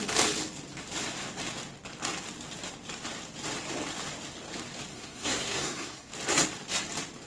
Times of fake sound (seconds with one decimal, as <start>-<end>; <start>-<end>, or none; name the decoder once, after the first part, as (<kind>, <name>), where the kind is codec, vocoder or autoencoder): 4.9-6.1 (codec, SNAC)